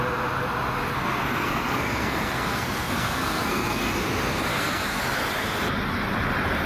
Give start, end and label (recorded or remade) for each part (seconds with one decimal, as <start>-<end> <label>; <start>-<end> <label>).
0.0-0.9 recorded; 0.9-3.8 remade; 3.8-4.5 recorded; 4.5-5.0 remade; 5.0-6.7 recorded

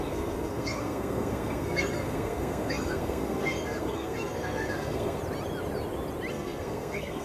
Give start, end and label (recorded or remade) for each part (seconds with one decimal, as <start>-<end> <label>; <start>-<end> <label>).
0.0-5.2 remade; 5.2-6.3 recorded; 6.3-7.2 remade

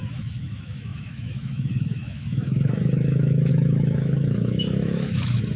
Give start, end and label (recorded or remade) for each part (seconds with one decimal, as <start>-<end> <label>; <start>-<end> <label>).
0.0-5.6 remade

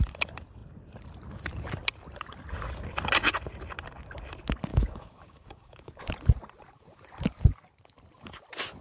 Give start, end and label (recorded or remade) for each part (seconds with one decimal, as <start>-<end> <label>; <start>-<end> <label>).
0.0-4.7 recorded; 4.7-6.0 remade; 6.0-8.8 recorded

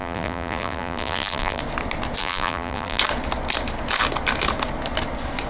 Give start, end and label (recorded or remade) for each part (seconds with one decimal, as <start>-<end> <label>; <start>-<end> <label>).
0.0-1.6 remade; 1.6-2.2 recorded; 2.2-3.0 remade; 3.0-5.5 recorded

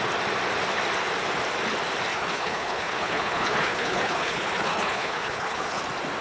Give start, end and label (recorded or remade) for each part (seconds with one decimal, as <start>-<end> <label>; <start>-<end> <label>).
0.0-2.1 recorded; 2.1-5.8 remade; 5.8-6.2 recorded